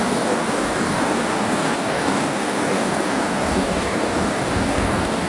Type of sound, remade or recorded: remade